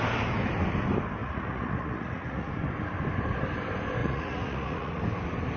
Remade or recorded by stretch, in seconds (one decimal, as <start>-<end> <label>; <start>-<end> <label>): 0.0-1.2 recorded; 1.2-2.5 remade; 2.5-4.0 recorded; 4.0-5.0 remade; 5.0-5.6 recorded